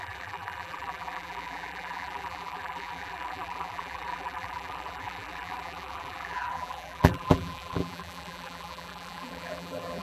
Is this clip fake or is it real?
fake